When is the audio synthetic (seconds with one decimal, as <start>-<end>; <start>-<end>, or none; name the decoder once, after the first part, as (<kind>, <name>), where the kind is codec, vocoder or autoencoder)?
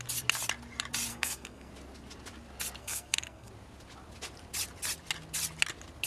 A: 1.1-1.7 (codec, SNAC); 2.8-3.5